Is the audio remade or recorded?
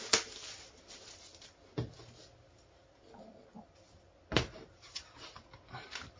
recorded